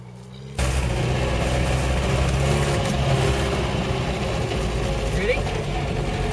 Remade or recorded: recorded